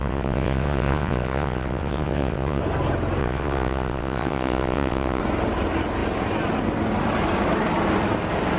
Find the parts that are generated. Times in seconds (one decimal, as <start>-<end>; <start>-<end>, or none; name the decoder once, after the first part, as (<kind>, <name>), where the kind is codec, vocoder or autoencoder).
0.0-2.6 (vocoder, WaveNeXt); 3.2-5.2